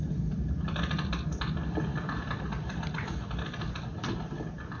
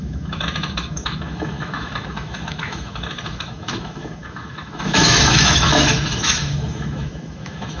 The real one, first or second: first